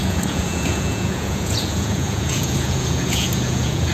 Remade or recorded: remade